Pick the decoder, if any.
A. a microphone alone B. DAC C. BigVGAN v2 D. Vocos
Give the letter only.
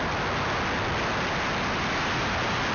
A